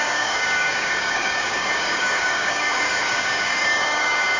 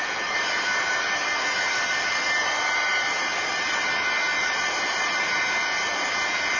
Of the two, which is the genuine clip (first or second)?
second